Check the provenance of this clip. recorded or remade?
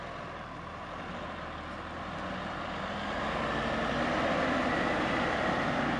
recorded